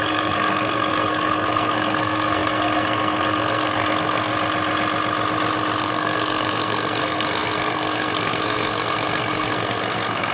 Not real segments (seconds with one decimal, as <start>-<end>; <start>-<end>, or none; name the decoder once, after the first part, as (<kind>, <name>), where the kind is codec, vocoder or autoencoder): 0.0-4.3 (codec, SNAC); 5.8-10.3